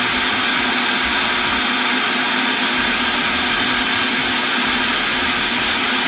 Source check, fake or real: real